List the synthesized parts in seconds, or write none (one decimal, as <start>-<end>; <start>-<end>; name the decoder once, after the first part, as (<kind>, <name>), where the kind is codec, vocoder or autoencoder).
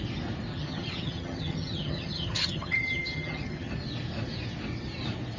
0.5-3.7 (vocoder, HiFi-GAN)